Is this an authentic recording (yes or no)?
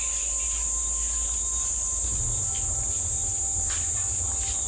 yes